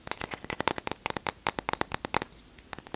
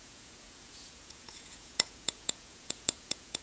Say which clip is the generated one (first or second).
second